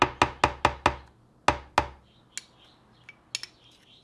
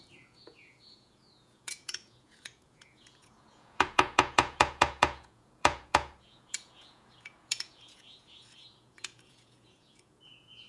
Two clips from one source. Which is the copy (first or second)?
second